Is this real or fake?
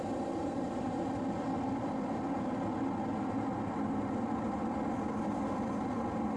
real